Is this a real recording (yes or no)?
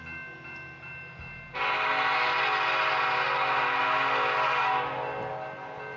yes